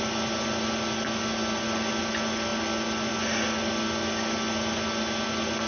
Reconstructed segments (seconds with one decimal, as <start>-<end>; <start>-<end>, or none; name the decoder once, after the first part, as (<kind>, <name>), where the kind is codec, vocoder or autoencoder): none